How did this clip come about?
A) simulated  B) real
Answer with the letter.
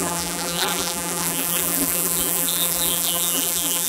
A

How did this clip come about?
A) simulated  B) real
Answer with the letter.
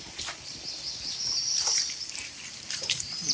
A